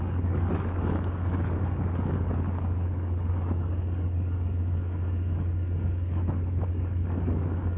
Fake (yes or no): yes